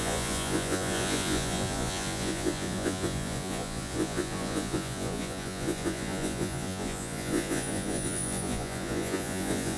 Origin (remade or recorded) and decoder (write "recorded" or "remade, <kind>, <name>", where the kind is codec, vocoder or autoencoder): remade, vocoder, Vocos